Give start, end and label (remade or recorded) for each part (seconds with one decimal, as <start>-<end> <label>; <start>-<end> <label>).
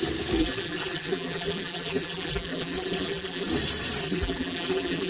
0.0-0.4 recorded; 0.4-3.5 remade; 3.5-4.0 recorded; 4.0-5.1 remade